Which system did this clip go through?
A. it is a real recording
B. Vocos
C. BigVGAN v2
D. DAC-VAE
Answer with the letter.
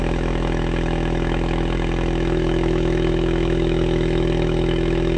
D